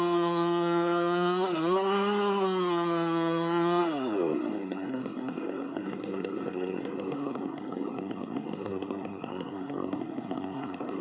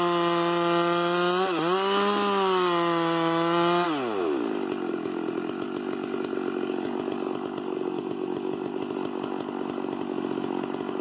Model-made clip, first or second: first